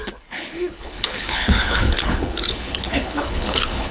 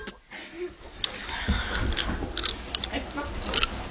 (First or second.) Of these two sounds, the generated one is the first